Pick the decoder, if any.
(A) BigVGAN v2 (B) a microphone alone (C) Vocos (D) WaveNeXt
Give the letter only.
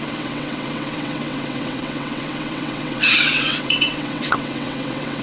D